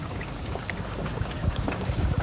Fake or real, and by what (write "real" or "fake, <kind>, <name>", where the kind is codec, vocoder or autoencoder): fake, codec, DAC